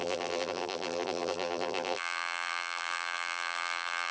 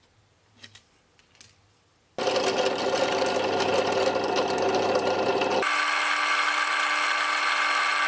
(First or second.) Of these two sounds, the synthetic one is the first